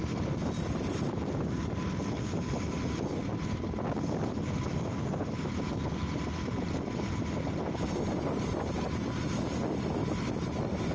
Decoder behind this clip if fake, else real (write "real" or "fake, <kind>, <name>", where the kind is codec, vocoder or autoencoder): real